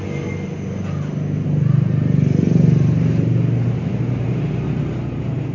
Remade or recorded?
recorded